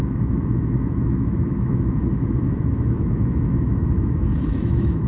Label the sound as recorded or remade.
remade